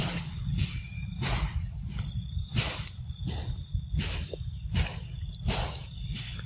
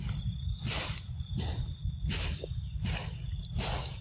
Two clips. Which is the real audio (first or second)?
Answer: second